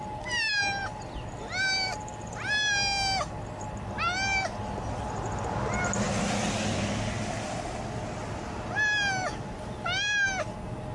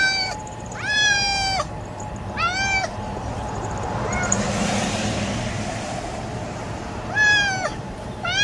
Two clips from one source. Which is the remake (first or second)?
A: second